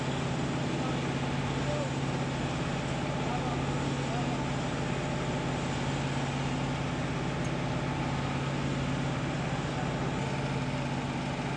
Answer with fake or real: real